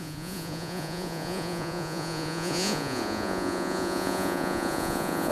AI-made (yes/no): yes